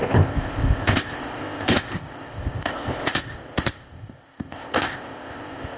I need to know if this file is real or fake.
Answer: fake